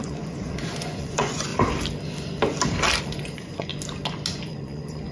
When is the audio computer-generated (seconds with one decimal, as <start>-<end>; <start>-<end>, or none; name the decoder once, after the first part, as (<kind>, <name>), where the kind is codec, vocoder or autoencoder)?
0.0-1.5 (vocoder, Vocos); 3.0-3.7; 4.3-5.1